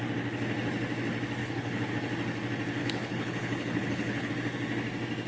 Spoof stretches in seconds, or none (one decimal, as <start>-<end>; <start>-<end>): 1.4-1.9; 2.8-4.3